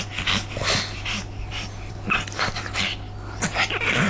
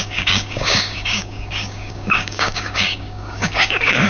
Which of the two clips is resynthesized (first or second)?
second